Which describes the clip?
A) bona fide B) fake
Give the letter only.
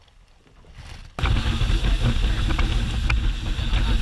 A